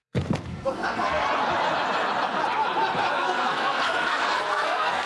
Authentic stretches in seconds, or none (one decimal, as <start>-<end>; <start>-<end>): 1.2-3.1